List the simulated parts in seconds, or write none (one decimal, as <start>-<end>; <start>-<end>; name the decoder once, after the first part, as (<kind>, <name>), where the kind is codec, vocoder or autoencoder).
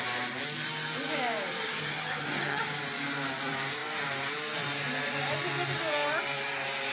1.6-2.6 (vocoder, HiFi-GAN)